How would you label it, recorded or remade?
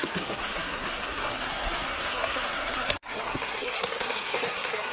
remade